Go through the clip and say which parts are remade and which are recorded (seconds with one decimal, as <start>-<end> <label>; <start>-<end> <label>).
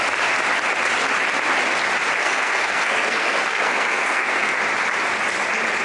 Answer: 0.0-2.2 recorded; 2.2-4.6 remade; 4.6-5.8 recorded